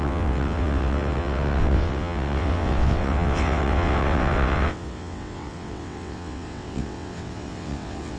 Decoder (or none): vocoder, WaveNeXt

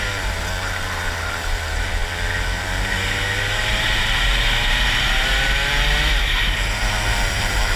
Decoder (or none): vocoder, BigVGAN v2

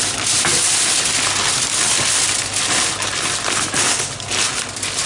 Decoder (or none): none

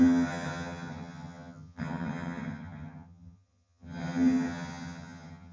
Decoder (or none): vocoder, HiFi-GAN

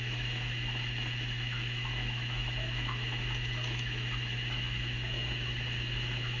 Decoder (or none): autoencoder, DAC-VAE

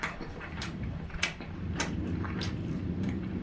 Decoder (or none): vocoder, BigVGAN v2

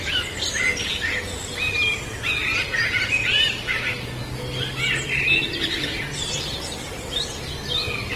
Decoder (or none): none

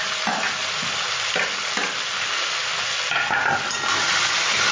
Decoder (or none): none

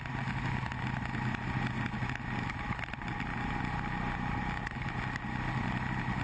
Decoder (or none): none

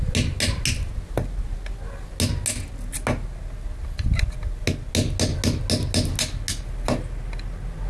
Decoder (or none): none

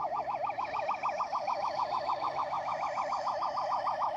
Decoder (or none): autoencoder, DAC-VAE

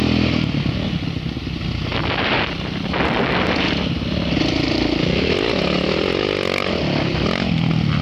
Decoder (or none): none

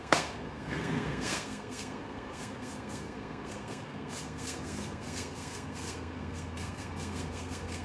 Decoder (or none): codec, SNAC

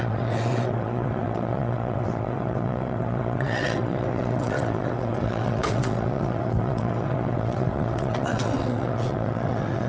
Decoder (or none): vocoder, WaveNeXt